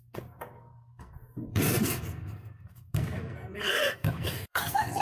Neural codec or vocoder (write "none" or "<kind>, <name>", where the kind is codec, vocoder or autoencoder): codec, SNAC